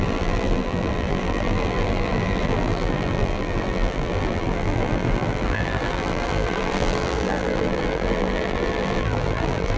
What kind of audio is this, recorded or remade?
remade